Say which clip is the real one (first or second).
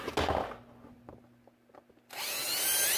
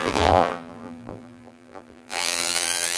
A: first